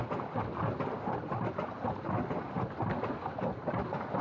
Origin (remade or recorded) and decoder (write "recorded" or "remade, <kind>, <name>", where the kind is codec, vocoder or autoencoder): recorded